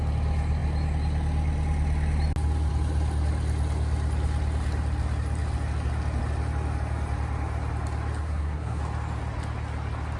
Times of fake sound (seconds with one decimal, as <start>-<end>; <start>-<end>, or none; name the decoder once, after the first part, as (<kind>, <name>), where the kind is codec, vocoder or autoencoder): 8.2-8.8 (codec, SNAC)